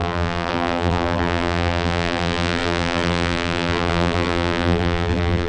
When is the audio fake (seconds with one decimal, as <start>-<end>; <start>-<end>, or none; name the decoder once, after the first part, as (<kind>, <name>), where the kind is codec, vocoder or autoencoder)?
0.0-5.5 (vocoder, BigVGAN v2)